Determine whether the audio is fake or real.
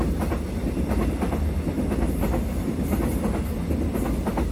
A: real